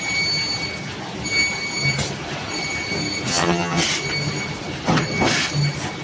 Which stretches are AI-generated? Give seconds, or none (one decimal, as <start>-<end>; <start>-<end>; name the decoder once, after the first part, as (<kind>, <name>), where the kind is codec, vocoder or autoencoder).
3.3-3.8 (vocoder, HiFi-GAN)